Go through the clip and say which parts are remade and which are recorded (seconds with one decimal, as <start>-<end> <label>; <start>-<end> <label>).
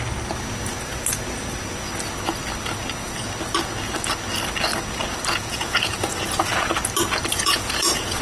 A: 0.0-5.3 recorded; 5.3-6.7 remade; 6.7-7.3 recorded; 7.3-8.2 remade